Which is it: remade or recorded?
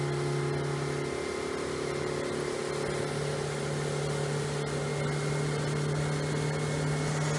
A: recorded